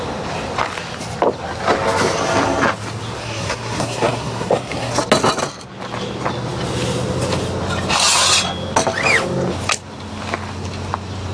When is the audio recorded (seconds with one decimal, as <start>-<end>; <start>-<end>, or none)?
0.0-3.2; 5.0-11.3